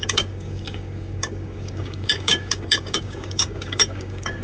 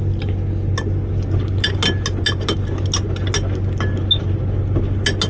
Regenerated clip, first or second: first